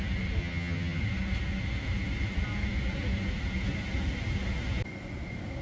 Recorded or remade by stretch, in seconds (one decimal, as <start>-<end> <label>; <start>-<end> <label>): 0.0-0.4 recorded; 0.4-1.0 remade; 1.0-5.6 recorded